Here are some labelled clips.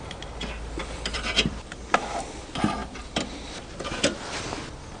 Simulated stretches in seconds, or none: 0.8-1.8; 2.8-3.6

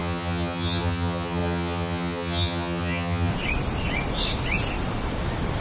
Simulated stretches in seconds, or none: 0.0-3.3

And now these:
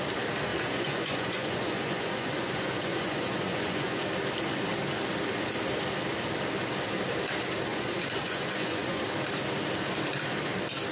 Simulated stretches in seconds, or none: 0.5-4.0; 7.7-9.0

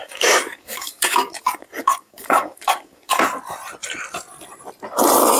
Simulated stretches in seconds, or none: 0.0-3.2